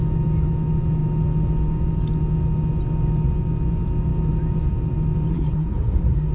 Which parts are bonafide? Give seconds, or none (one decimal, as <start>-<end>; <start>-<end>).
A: 0.0-5.3